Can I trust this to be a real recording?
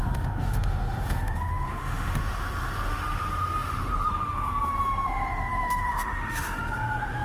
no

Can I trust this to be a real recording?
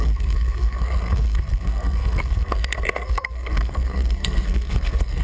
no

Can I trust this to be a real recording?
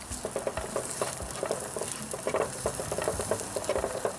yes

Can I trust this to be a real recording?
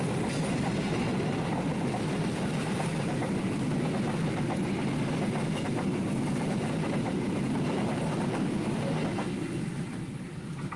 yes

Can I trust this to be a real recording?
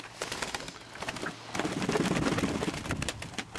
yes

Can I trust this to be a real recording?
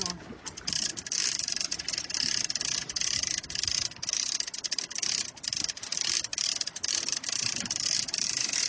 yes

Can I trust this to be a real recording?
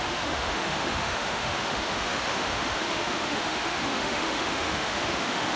no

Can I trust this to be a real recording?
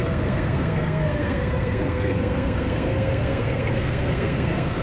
no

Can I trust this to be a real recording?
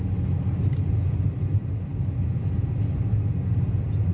yes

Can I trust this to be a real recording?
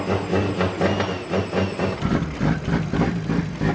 yes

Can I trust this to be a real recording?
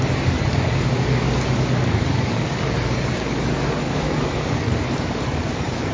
no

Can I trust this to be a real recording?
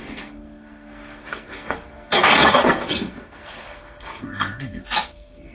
no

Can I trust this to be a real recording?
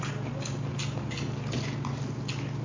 yes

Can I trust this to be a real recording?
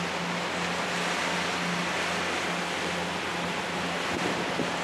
yes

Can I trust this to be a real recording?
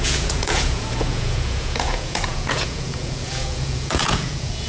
no